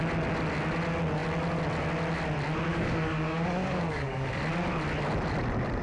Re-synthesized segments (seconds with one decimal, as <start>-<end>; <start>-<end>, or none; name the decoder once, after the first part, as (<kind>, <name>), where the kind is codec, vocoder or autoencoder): 2.7-4.4 (codec, DAC)